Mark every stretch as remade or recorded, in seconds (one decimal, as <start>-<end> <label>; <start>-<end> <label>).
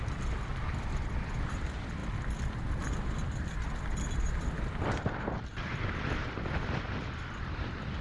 0.0-8.0 remade